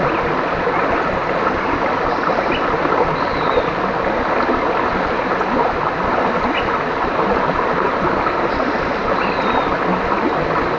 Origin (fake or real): real